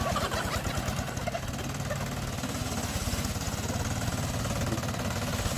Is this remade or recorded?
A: recorded